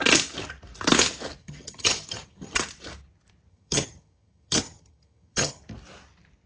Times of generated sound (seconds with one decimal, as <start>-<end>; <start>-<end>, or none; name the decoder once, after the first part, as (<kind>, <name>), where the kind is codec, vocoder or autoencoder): 1.4-2.6 (vocoder, HiFi-GAN); 3.5-5.6